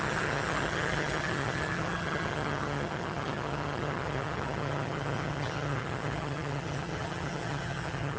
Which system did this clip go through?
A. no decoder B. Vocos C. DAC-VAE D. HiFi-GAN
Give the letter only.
D